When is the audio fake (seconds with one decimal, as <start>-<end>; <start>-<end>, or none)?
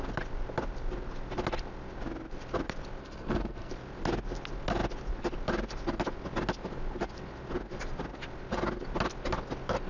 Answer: 3.0-3.7